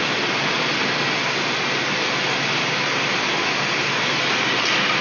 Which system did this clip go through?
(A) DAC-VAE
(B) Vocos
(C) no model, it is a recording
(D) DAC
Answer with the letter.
C